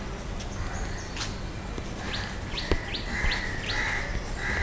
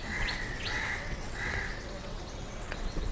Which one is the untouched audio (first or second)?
first